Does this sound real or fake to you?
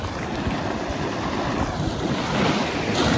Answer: real